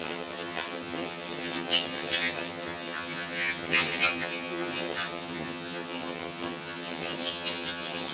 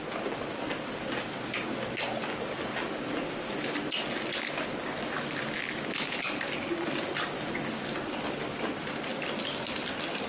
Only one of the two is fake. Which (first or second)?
first